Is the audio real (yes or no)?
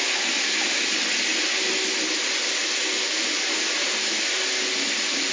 yes